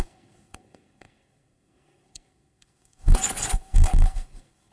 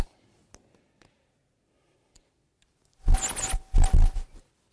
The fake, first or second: first